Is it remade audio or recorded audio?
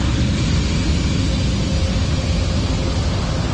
recorded